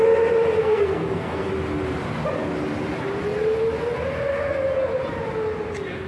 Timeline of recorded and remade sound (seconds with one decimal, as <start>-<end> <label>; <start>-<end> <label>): 0.0-0.6 recorded; 0.6-1.5 remade; 1.5-6.1 recorded